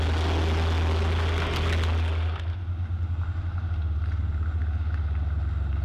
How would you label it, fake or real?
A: real